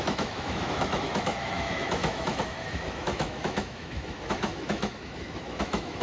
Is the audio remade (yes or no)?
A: yes